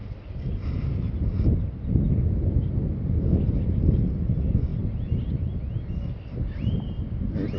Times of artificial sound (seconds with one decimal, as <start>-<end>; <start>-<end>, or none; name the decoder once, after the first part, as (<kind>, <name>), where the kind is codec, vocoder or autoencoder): none